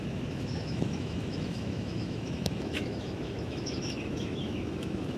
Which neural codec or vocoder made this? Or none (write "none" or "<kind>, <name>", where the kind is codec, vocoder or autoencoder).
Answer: autoencoder, DAC-VAE